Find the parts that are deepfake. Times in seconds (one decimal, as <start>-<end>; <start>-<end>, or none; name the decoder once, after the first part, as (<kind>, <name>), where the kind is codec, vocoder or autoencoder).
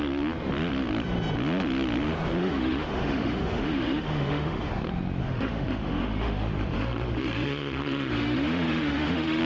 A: 2.4-4.7 (autoencoder, DAC-VAE); 5.2-9.4